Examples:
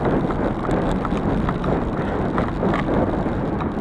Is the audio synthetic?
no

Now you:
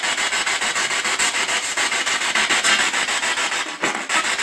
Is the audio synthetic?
no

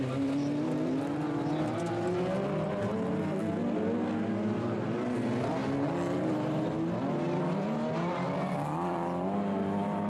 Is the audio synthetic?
no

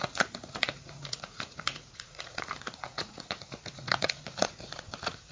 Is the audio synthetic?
yes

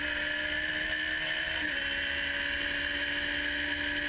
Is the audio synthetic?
no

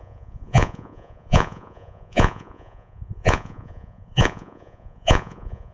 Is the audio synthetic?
yes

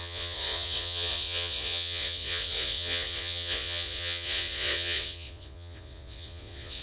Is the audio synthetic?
yes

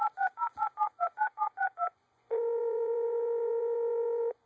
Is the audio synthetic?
yes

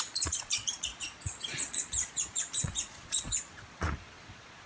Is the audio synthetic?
yes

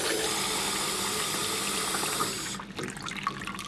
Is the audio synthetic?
no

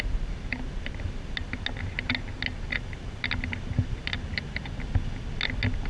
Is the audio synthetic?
no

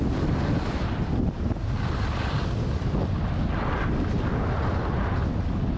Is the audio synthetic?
no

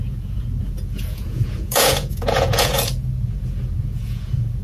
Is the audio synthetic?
yes